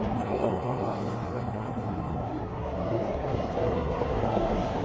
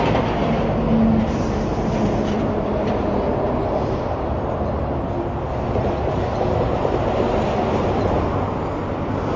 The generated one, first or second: first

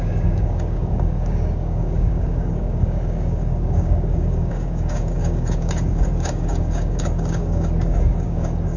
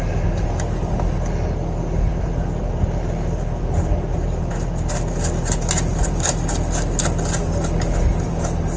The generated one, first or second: first